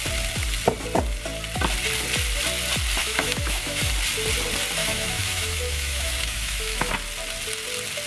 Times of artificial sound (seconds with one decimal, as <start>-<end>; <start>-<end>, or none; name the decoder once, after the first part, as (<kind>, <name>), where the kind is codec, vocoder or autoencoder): 3.0-3.8 (autoencoder, DAC-VAE); 4.8-6.9